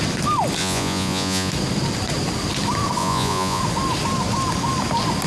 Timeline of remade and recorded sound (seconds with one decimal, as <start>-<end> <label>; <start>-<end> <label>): 0.0-0.6 recorded; 0.6-1.5 remade; 1.5-3.0 recorded; 3.0-3.6 remade; 3.6-5.3 recorded